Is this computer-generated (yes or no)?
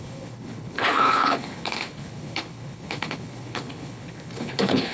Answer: yes